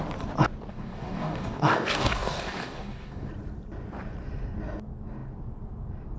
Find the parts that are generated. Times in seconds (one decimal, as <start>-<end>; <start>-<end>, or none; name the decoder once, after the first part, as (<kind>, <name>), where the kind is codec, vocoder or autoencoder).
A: 0.7-3.3 (codec, DAC)